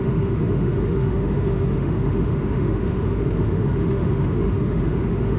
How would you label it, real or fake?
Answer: fake